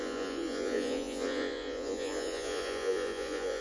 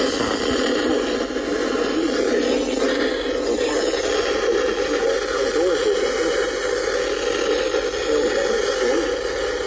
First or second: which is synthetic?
first